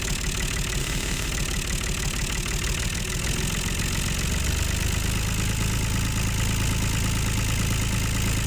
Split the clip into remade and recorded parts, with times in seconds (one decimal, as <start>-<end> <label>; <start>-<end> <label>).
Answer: 0.0-0.8 recorded; 0.8-1.3 remade; 1.3-8.5 recorded